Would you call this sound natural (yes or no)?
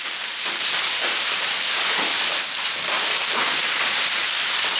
no